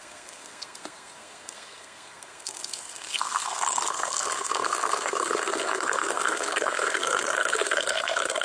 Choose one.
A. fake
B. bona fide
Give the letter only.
A